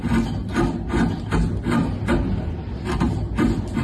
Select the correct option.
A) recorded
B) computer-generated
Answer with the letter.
A